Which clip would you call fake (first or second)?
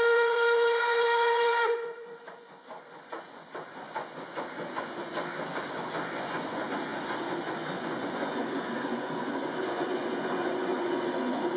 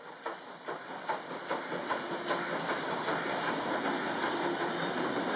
first